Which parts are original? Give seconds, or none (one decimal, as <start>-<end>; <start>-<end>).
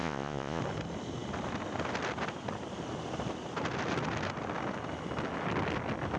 0.6-6.2